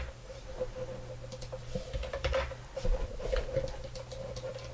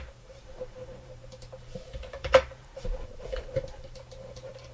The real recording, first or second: first